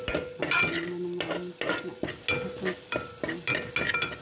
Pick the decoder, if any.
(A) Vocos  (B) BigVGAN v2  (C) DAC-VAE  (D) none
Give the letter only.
D